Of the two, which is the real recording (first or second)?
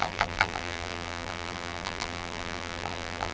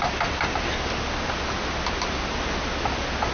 second